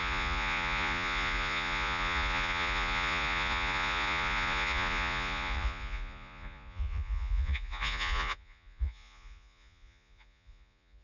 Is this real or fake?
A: fake